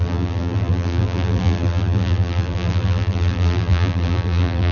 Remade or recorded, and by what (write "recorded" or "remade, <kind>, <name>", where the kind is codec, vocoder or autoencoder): remade, vocoder, BigVGAN v2